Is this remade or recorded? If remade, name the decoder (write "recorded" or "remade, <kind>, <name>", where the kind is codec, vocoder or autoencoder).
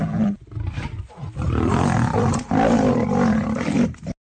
recorded